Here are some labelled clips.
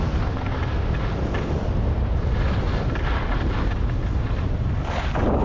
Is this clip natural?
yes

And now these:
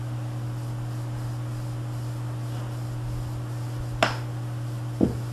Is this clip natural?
yes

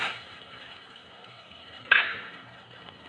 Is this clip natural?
no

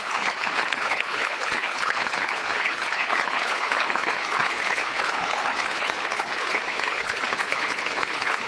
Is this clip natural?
no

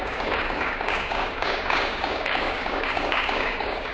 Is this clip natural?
no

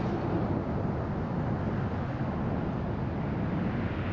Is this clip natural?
yes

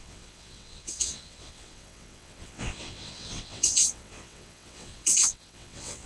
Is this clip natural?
no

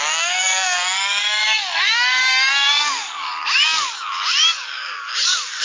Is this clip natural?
no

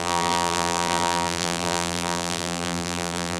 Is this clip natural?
no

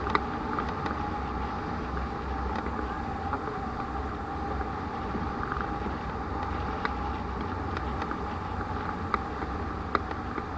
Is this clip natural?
yes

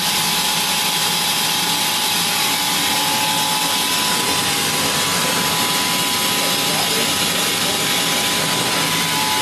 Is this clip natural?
yes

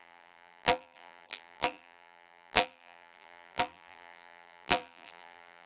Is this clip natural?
no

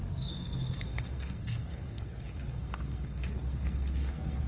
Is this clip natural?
no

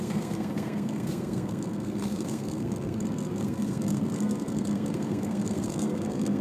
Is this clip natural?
no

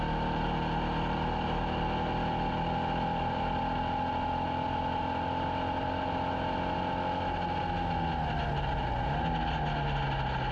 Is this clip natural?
yes